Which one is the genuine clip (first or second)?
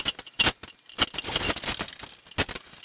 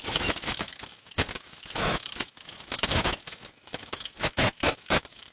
first